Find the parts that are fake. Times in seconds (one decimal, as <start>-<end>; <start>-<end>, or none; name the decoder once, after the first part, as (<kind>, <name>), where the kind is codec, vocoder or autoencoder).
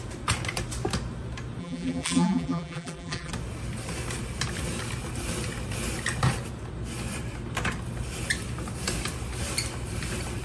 1.6-3.3 (vocoder, BigVGAN v2)